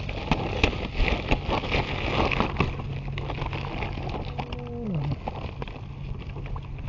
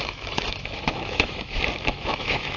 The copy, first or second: second